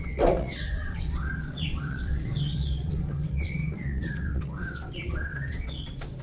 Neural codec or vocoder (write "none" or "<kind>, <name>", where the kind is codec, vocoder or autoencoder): vocoder, WaveNeXt